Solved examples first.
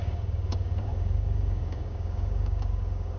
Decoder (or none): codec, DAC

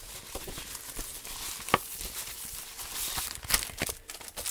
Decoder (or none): none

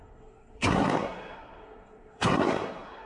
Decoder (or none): codec, SNAC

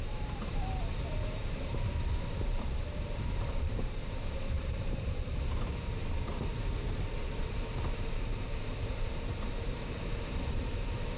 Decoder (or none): vocoder, BigVGAN v2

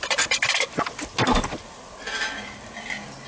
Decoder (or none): none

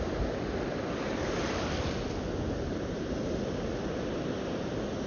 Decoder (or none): none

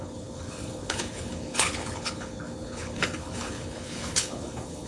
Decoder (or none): codec, HILCodec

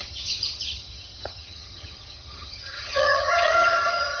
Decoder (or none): vocoder, HiFi-GAN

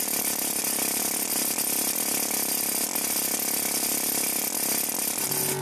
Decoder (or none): none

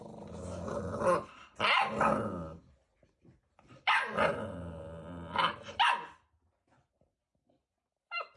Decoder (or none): none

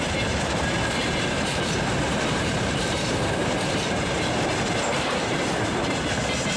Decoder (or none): vocoder, BigVGAN v2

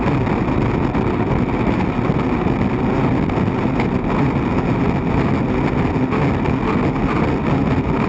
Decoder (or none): none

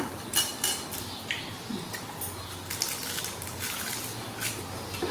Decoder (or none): none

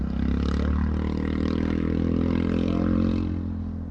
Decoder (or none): none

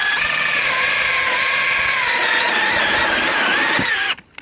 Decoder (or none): none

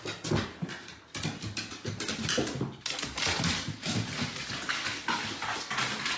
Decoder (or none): none